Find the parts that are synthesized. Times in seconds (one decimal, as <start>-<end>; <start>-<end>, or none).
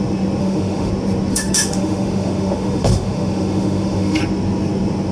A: 0.4-0.9; 1.3-4.2